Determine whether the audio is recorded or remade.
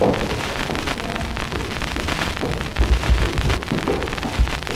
recorded